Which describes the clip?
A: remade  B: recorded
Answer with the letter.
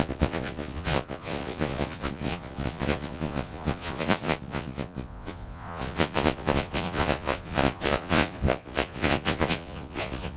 A